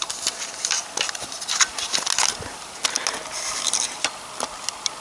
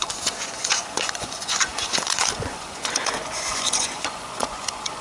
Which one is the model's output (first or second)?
second